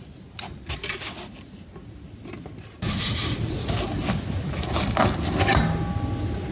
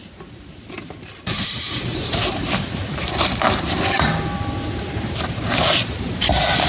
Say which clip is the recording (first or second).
first